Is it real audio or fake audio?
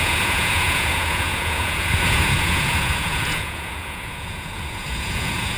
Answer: fake